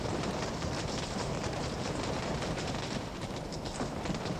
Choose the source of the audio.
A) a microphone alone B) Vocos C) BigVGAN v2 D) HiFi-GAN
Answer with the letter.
C